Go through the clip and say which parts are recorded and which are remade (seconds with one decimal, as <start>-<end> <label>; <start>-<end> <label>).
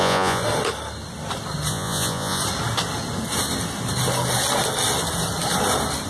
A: 0.0-0.4 remade; 0.4-1.7 recorded; 1.7-2.4 remade; 2.4-6.1 recorded